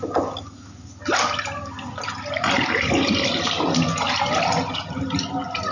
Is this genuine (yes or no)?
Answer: yes